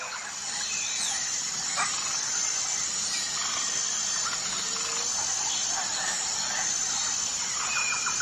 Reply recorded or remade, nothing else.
recorded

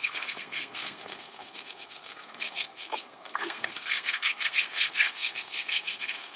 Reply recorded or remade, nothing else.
remade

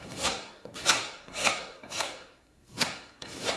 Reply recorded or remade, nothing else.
remade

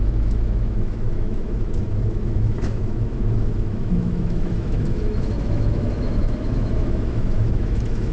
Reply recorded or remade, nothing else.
remade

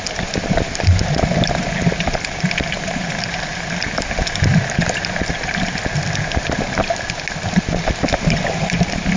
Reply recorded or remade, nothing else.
recorded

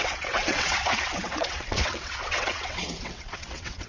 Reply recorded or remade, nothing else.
remade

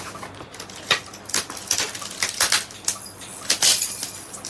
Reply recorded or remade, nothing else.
recorded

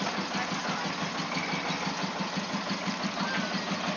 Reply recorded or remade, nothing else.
recorded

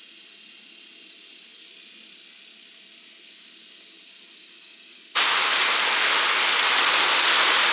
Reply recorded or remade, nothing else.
recorded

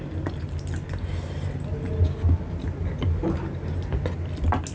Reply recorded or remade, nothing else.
recorded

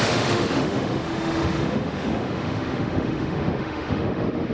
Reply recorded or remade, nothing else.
remade